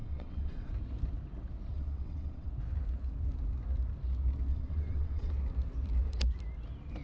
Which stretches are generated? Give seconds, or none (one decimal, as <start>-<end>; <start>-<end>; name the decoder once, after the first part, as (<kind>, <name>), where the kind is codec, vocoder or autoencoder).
0.0-0.7 (vocoder, WaveNeXt); 1.7-2.5; 4.5-5.3

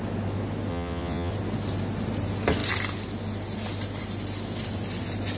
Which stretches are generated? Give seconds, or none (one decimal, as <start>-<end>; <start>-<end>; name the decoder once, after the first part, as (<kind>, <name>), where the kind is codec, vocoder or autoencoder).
0.7-1.3 (vocoder, WaveNeXt)

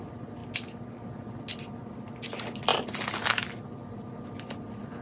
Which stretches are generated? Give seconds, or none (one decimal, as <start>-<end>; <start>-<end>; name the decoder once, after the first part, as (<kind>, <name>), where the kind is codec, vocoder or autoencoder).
none

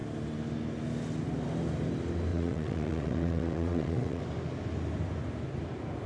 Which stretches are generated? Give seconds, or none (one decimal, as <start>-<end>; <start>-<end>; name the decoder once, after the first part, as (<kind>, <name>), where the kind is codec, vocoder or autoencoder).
2.3-4.2 (vocoder, WaveNeXt)

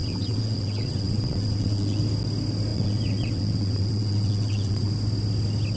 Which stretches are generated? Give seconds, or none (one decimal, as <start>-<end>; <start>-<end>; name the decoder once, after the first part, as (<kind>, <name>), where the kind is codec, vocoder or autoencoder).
0.0-2.0 (vocoder, WaveNeXt); 2.7-4.9

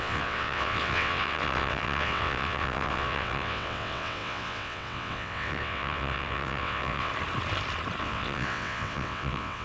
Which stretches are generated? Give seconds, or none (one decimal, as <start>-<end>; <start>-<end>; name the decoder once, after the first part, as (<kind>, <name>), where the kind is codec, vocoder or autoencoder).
0.0-7.1 (vocoder, WaveNeXt); 8.0-9.6